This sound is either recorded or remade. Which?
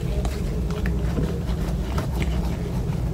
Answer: recorded